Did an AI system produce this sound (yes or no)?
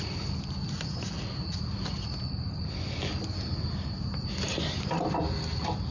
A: no